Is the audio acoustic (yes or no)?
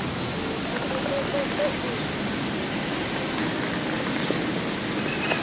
yes